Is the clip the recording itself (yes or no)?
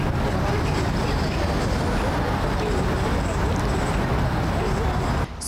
yes